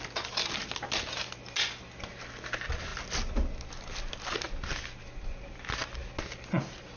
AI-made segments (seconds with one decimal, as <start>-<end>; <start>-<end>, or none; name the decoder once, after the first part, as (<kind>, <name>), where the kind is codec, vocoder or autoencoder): none